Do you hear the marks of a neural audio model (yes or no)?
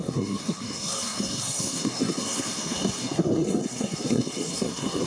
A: yes